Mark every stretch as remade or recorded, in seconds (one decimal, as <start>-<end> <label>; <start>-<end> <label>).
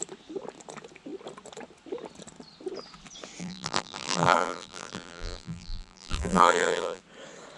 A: 0.0-3.4 recorded; 3.4-7.0 remade; 7.0-7.6 recorded